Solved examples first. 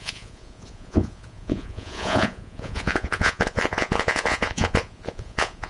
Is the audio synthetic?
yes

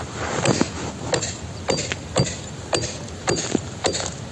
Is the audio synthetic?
no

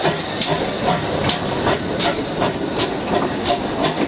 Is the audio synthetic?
no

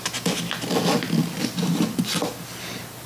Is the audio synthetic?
no